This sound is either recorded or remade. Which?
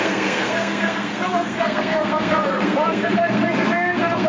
remade